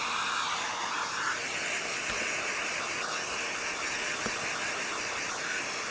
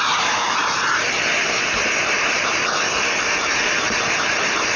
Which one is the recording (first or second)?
first